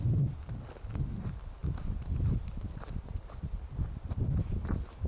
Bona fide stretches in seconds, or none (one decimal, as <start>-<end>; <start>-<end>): 0.0-5.1

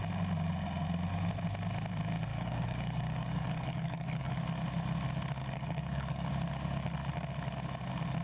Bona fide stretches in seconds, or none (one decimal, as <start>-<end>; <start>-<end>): 0.0-2.3; 4.4-5.4; 6.3-8.2

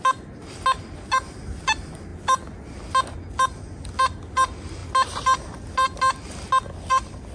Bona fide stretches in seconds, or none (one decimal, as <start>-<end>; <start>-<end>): 0.0-7.3

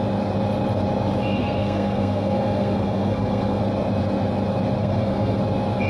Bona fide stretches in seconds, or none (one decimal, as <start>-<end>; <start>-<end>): 0.0-1.4; 3.6-4.8; 5.4-5.9

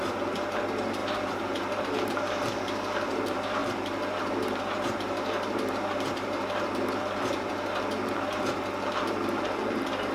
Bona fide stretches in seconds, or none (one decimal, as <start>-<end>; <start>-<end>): none